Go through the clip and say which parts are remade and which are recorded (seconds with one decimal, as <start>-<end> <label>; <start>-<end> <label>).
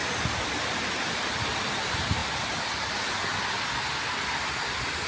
0.0-5.1 recorded